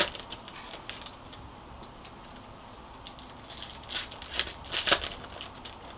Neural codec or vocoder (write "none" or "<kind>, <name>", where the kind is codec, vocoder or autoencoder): none